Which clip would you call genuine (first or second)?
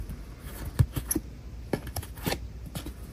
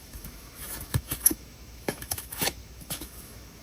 first